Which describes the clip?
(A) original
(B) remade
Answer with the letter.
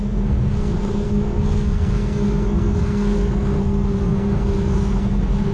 B